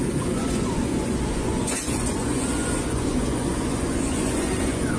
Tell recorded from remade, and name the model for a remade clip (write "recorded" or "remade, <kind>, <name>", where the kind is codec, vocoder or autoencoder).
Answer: remade, vocoder, Vocos